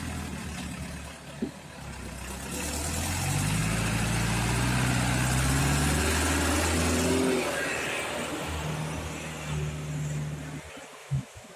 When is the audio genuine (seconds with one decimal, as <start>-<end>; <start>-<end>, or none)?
0.0-11.0